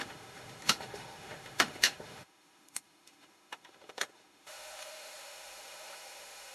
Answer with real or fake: fake